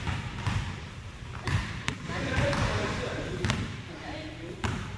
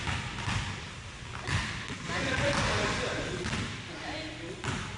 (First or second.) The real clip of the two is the second